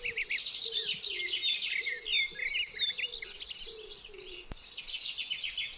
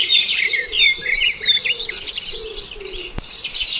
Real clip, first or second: first